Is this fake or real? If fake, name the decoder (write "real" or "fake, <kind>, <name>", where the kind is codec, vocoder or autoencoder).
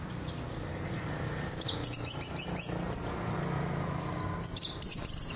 real